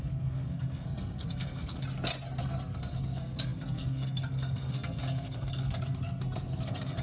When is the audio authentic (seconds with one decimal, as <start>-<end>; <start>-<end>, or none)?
1.8-2.4